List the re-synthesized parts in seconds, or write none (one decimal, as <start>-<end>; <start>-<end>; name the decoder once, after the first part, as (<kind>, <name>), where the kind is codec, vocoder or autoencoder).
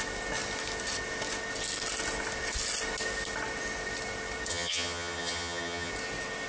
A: 4.5-5.9 (vocoder, HiFi-GAN)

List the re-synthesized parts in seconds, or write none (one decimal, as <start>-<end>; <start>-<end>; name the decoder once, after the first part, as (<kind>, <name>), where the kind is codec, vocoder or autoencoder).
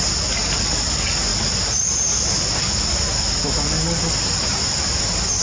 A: none